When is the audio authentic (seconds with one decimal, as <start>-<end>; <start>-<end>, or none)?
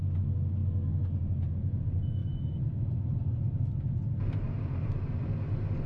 0.0-2.2; 5.4-5.9